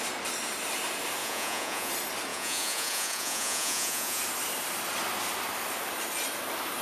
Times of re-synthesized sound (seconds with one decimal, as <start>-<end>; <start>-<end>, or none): 1.2-1.9; 2.3-4.2